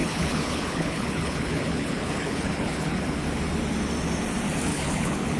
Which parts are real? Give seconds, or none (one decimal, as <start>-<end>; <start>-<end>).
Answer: 3.2-4.7